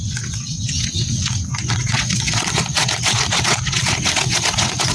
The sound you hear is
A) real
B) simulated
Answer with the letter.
B